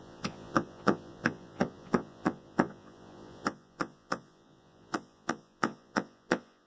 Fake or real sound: fake